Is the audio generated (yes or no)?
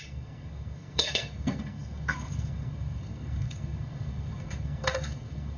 yes